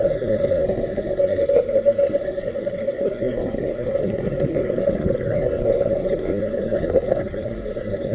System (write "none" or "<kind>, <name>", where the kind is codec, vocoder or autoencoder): codec, SNAC